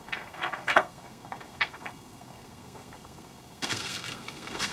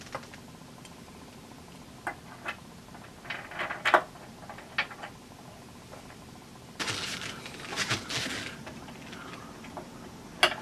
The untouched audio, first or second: second